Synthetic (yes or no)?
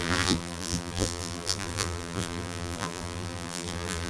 yes